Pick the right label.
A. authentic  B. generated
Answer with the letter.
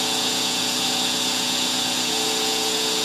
B